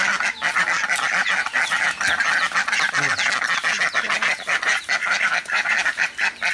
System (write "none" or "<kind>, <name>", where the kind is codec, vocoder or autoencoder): none